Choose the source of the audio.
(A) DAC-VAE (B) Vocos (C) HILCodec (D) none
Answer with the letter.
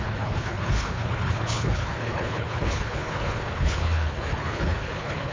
C